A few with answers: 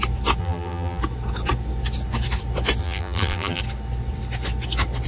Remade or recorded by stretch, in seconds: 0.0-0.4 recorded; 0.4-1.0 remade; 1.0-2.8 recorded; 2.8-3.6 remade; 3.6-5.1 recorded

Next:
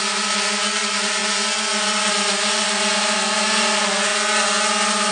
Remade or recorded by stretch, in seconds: 0.0-1.2 remade; 1.2-2.1 recorded; 2.1-4.1 remade; 4.1-5.1 recorded

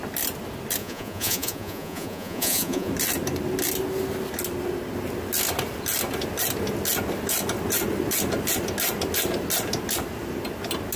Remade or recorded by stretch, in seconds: 0.0-0.8 recorded; 0.8-2.9 remade; 2.9-11.0 recorded

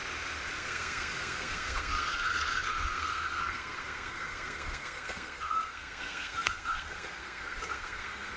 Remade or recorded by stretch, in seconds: 0.0-0.6 recorded; 0.6-8.4 remade

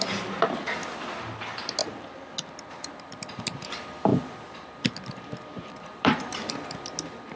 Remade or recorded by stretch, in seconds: 0.0-1.8 recorded; 1.8-2.7 remade; 2.7-4.1 recorded; 4.1-6.6 remade; 6.6-7.4 recorded

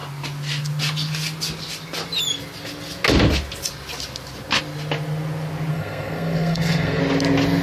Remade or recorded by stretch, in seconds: 0.0-5.7 recorded; 5.7-7.0 remade; 7.0-7.6 recorded